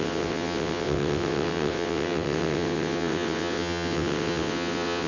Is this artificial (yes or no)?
yes